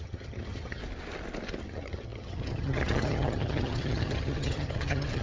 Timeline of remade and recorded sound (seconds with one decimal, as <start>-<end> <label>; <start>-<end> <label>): 0.0-0.8 remade; 0.8-1.6 recorded; 1.6-5.2 remade